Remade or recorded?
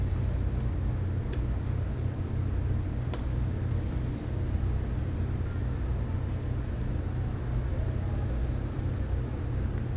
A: recorded